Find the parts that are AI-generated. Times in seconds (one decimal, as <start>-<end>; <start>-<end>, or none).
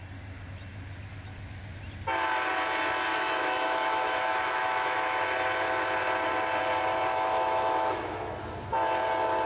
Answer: 3.1-5.2; 7.1-8.3